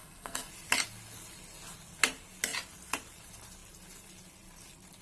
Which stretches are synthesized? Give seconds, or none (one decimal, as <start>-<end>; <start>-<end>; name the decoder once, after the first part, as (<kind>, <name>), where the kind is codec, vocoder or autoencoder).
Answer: 0.0-0.5 (codec, SNAC)